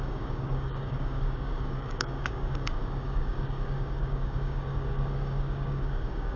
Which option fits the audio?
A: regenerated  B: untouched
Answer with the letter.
A